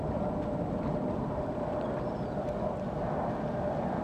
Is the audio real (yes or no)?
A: yes